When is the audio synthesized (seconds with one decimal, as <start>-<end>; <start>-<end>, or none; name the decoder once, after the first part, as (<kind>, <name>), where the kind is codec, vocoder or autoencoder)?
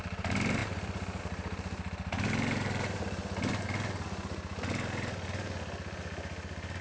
0.0-3.5 (vocoder, BigVGAN v2)